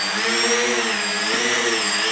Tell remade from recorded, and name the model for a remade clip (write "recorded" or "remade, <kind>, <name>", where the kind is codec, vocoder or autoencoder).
recorded